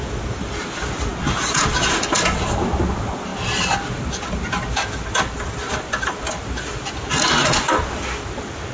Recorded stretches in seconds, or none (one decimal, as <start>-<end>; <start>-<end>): 0.0-8.7